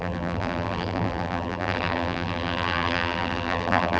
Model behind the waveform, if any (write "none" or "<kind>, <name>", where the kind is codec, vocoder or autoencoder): vocoder, BigVGAN v2